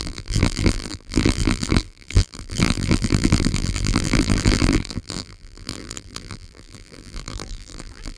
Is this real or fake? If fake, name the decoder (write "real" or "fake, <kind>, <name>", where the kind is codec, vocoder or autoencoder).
fake, vocoder, BigVGAN v2